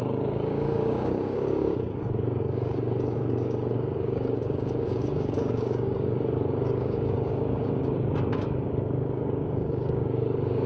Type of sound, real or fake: fake